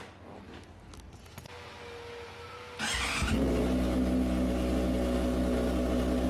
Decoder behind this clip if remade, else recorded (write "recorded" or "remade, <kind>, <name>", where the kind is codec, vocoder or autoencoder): recorded